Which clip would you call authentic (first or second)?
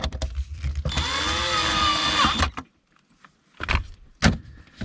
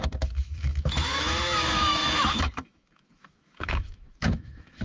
first